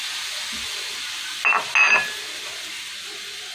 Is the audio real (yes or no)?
yes